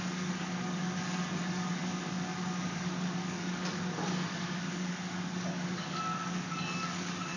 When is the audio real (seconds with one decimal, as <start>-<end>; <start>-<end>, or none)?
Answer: none